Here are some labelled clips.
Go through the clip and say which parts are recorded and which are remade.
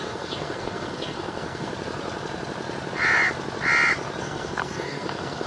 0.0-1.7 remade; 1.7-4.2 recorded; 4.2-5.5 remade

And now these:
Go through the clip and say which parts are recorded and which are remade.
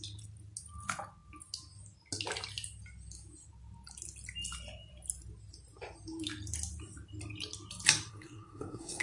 0.0-8.1 recorded; 8.1-9.0 remade